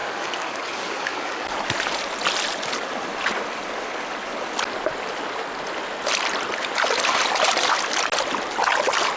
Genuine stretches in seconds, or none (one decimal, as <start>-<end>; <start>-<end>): 1.6-9.2